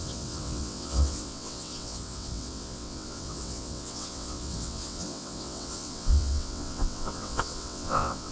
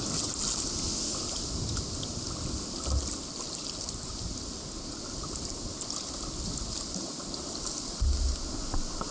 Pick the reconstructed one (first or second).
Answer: first